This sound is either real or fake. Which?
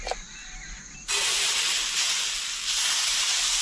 real